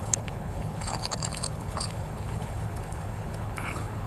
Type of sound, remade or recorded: remade